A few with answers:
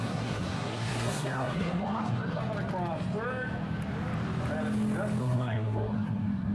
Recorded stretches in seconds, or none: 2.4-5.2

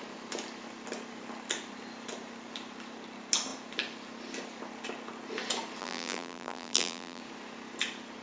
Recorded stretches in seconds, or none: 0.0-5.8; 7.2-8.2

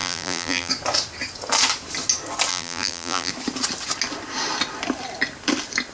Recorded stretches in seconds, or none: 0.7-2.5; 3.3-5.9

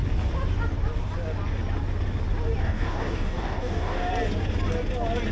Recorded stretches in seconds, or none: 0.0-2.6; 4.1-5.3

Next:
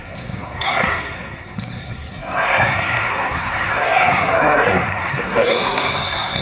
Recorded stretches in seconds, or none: none